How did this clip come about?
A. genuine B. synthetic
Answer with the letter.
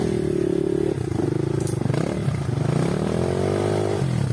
A